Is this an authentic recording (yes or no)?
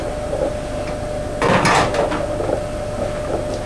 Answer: yes